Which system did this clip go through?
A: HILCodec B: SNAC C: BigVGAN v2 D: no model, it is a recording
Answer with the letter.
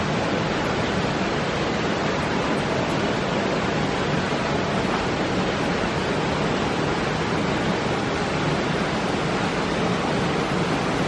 D